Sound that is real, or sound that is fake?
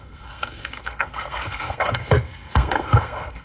fake